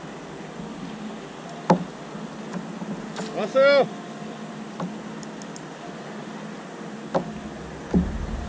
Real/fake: real